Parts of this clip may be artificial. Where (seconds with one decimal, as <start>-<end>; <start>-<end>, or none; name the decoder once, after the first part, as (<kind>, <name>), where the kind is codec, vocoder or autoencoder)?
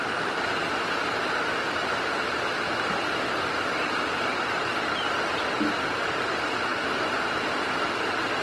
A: none